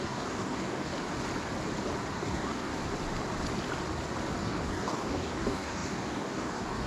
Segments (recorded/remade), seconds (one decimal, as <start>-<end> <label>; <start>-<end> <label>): 0.0-0.9 remade; 0.9-2.1 recorded; 2.1-2.7 remade; 2.7-4.4 recorded; 4.4-6.9 remade